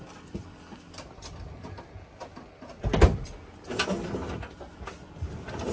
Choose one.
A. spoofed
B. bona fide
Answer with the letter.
B